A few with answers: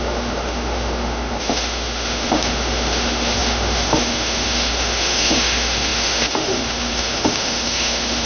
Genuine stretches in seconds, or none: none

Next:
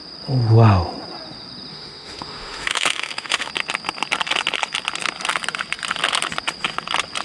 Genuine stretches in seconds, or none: 0.0-1.7; 3.5-7.2